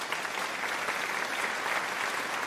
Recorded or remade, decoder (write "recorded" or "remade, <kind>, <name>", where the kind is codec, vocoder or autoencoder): recorded